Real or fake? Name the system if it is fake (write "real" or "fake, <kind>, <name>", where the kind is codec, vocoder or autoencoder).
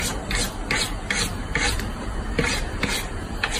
fake, vocoder, BigVGAN v2